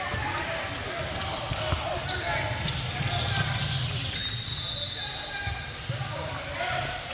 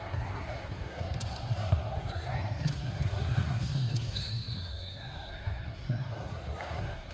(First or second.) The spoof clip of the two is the second